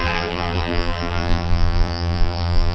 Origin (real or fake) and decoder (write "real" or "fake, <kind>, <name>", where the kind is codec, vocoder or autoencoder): fake, vocoder, BigVGAN v2